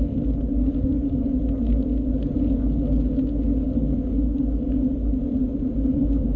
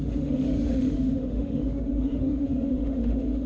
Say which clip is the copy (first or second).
second